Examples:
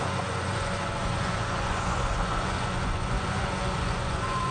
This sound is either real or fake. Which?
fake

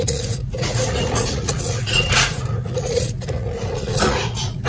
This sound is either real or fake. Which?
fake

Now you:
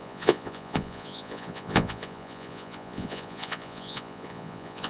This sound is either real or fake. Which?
fake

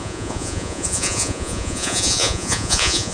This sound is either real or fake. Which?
fake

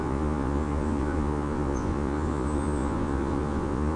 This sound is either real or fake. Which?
fake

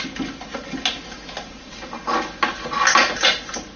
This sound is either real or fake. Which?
real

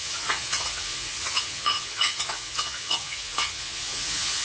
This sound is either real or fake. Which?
fake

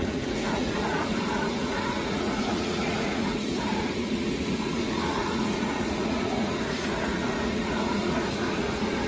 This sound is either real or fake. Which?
fake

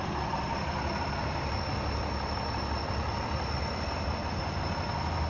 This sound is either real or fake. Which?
real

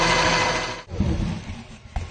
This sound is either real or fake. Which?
real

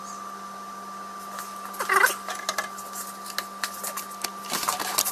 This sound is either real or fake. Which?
real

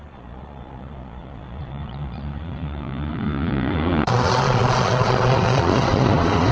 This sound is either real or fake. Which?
fake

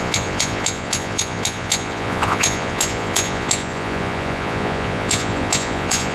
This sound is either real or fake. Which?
fake